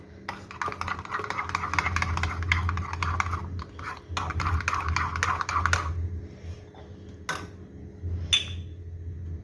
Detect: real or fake real